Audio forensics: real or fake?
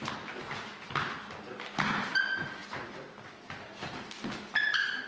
real